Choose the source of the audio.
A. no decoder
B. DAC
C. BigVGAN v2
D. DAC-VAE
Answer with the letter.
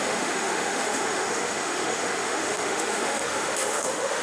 D